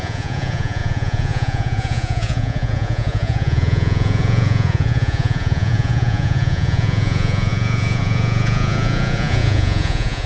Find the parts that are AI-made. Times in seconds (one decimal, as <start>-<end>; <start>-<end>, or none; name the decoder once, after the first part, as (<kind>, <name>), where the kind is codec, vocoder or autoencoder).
0.0-10.3 (vocoder, Vocos)